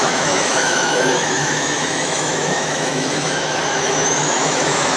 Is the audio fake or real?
fake